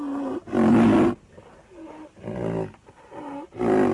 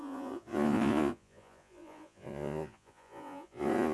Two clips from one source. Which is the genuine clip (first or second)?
first